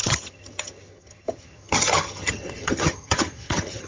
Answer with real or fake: fake